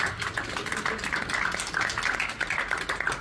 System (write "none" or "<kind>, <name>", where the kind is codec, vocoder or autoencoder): none